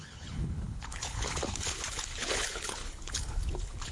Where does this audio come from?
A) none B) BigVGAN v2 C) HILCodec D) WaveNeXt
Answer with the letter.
C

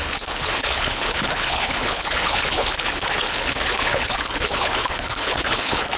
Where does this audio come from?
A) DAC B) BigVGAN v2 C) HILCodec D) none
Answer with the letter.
C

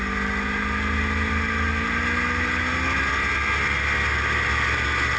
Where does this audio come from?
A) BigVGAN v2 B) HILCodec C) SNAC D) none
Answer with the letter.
D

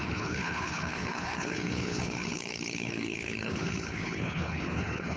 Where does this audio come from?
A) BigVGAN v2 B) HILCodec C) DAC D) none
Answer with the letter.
B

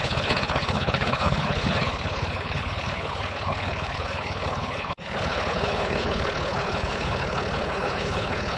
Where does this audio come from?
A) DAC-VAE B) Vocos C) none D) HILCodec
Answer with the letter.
D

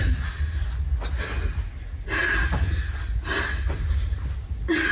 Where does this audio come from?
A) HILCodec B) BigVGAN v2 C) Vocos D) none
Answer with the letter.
D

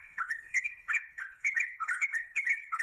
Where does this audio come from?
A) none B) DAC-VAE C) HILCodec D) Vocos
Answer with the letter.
C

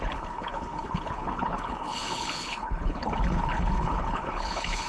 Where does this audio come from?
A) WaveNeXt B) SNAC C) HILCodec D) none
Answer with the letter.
C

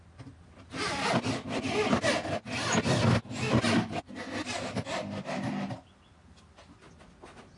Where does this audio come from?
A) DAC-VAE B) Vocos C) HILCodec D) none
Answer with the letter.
D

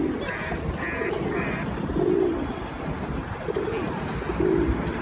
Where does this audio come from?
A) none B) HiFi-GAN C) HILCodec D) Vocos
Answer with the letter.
A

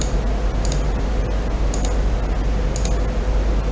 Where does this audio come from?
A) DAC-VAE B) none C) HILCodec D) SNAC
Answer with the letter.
B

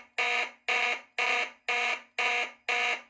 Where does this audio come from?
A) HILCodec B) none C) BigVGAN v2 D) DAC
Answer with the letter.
B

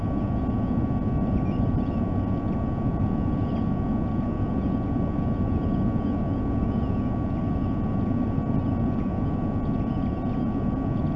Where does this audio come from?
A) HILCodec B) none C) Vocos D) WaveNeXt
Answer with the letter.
B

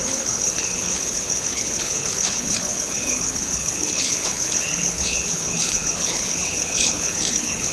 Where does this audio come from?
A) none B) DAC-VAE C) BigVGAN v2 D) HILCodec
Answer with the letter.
D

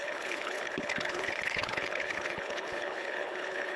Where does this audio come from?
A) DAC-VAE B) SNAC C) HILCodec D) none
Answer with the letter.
C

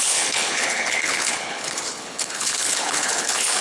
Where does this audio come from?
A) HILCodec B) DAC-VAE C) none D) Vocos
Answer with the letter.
A